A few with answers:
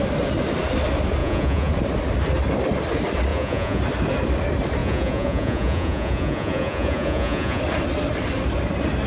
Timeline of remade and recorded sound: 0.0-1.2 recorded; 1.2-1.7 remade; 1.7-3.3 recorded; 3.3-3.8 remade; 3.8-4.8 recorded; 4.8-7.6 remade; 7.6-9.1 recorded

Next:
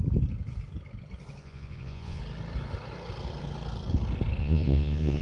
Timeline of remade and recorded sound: 0.0-1.4 recorded; 1.4-2.2 remade; 2.2-4.4 recorded; 4.4-5.2 remade

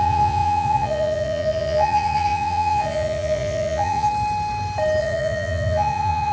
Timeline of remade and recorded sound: 0.0-4.1 remade; 4.1-5.0 recorded; 5.0-6.3 remade

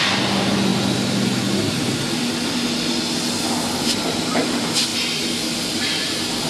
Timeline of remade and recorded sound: 0.0-6.5 recorded

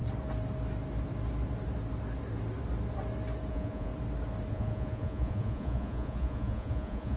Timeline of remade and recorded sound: 0.0-3.5 recorded; 3.5-3.9 remade; 3.9-4.5 recorded; 4.5-7.2 remade

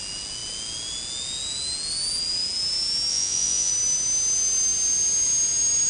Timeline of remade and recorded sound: 0.0-3.1 recorded; 3.1-3.7 remade; 3.7-5.9 recorded

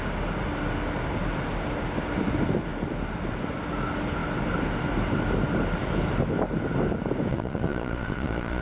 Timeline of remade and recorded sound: 0.0-7.3 recorded; 7.3-8.6 remade